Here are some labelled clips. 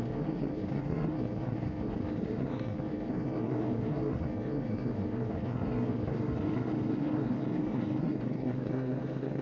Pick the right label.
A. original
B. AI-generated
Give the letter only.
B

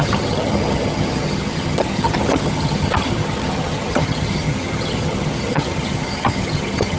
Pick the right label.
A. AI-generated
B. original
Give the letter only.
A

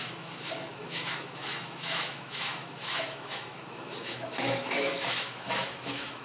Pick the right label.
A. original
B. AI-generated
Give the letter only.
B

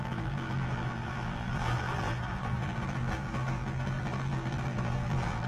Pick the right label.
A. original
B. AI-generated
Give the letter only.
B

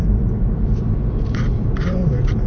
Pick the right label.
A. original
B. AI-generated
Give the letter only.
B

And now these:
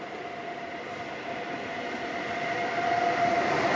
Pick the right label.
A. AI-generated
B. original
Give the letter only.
B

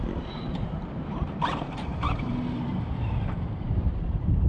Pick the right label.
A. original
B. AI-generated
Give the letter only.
B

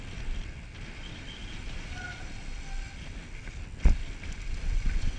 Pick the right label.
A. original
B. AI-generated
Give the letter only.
A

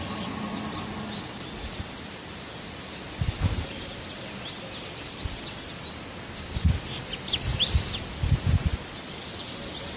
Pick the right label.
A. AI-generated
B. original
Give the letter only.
B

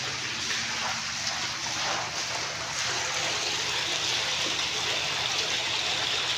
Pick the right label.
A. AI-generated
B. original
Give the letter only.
B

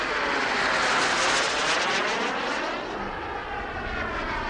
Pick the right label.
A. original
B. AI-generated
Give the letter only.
A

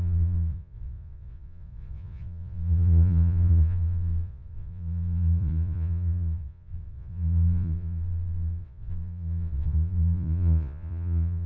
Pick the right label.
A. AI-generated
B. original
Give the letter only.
A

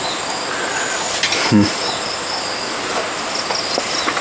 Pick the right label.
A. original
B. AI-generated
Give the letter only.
A